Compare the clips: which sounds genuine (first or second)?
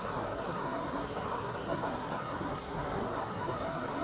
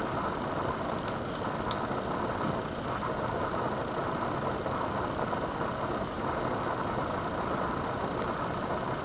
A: second